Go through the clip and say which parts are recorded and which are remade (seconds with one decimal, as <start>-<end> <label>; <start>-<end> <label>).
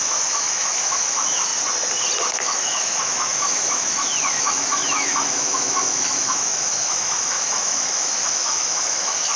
0.0-1.5 remade; 1.5-2.3 recorded; 2.3-9.4 remade